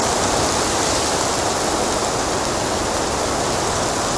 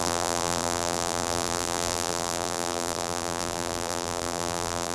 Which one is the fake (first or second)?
second